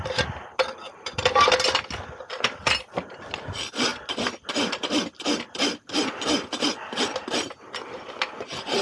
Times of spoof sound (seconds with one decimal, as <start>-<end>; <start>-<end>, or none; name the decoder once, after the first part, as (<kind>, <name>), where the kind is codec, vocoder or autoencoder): none